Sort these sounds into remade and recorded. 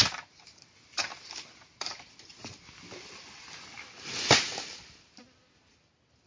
recorded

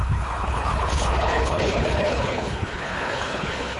remade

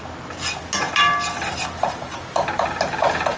recorded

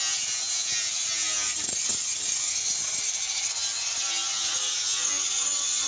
recorded